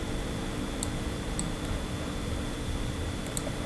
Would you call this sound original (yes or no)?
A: no